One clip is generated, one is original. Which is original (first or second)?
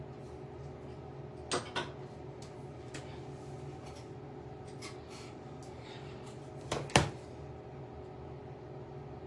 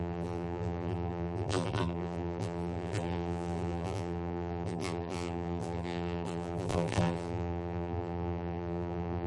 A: first